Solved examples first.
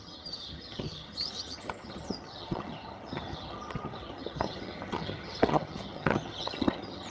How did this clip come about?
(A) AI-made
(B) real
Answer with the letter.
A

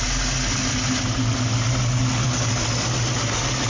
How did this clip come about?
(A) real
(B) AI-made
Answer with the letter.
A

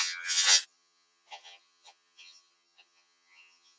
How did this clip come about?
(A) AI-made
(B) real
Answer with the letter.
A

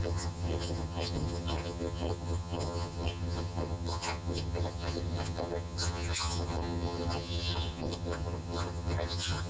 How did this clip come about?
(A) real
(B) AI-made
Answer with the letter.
B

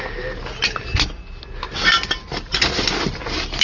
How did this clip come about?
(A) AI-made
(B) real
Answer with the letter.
B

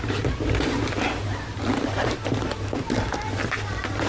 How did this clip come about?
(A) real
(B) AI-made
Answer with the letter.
A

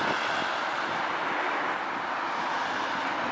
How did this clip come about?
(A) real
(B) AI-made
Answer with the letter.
A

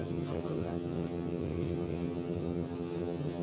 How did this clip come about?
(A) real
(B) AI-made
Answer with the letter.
B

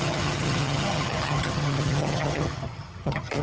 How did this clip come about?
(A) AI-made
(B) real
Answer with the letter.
A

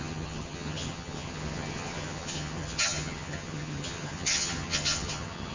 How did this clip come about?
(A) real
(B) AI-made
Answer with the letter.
B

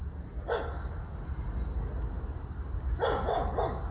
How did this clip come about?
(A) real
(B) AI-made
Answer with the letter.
A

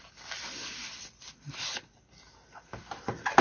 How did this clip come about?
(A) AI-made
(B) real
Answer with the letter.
B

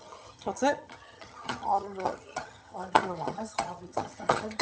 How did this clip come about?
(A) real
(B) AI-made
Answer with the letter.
B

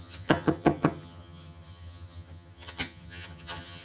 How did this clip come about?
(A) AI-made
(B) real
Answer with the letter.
A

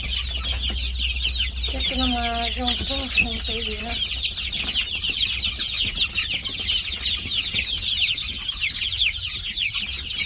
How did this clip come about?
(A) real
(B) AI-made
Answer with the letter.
A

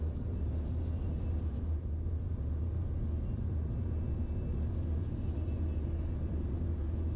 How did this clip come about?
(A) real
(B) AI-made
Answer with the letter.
A